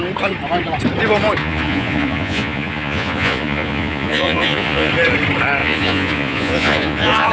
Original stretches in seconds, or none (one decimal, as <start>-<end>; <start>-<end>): 0.0-1.4; 4.9-5.6